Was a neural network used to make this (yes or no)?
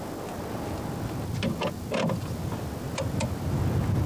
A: no